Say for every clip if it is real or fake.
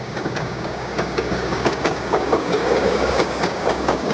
fake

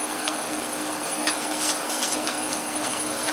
fake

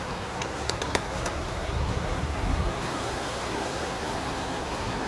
fake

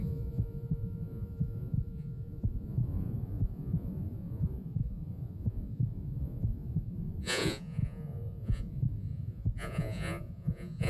fake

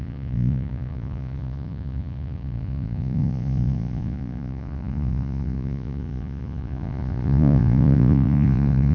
fake